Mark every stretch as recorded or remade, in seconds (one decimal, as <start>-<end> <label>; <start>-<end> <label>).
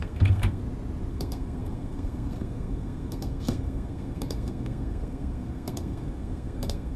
0.0-0.6 remade; 0.6-1.1 recorded; 1.1-7.0 remade